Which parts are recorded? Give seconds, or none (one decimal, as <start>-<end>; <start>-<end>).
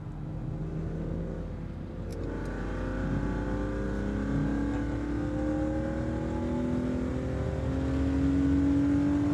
0.0-9.3